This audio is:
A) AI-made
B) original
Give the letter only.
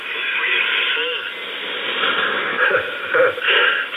B